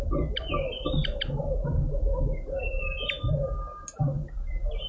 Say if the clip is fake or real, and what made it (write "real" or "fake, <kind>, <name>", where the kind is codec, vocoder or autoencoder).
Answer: real